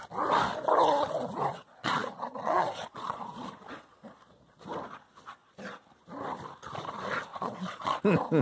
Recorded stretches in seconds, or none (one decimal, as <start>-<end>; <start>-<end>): 0.0-1.5; 4.5-7.3; 8.0-8.4